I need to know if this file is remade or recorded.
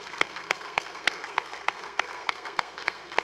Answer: remade